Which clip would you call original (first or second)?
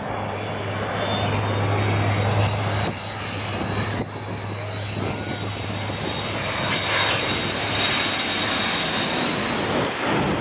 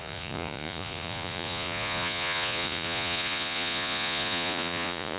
first